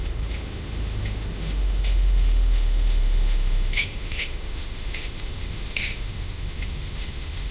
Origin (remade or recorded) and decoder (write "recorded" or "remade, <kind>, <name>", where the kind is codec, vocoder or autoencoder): remade, autoencoder, DAC-VAE